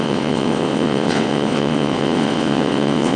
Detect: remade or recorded remade